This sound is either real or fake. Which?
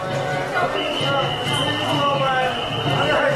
real